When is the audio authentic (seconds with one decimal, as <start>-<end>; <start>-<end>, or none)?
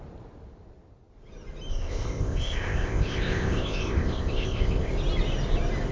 0.0-1.7; 4.9-5.9